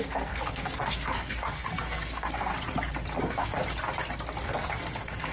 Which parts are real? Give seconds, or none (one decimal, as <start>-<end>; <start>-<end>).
2.5-3.2; 3.6-4.4